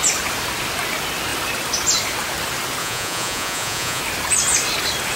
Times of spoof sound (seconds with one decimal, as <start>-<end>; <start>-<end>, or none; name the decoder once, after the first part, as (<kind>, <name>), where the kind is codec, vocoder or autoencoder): 2.8-4.0 (vocoder, Vocos)